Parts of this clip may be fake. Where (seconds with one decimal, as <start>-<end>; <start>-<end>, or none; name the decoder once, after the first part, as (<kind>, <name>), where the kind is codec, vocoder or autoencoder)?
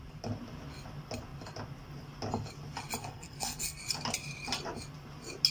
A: 3.0-3.8 (codec, SNAC)